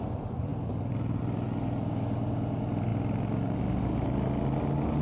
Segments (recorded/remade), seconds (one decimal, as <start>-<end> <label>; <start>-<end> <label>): 0.0-5.0 recorded

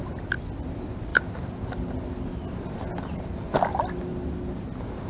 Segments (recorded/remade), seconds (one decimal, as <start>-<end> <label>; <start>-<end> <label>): 0.0-5.1 recorded